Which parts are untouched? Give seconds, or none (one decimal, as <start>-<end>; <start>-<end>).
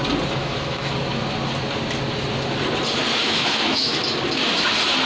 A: 0.0-0.4; 0.9-3.2; 4.0-5.1